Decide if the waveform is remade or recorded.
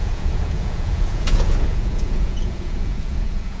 remade